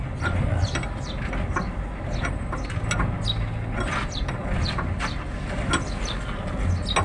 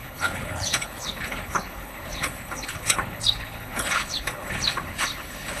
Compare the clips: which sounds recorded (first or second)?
first